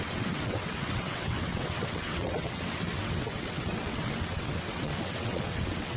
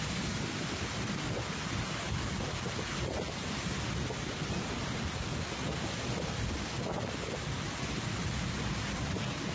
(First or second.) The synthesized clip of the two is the first